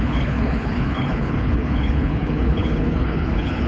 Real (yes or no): no